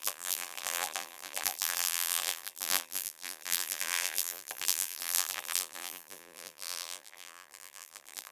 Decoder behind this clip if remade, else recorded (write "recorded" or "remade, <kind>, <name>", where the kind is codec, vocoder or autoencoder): remade, vocoder, BigVGAN v2